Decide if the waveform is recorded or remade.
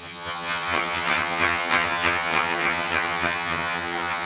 remade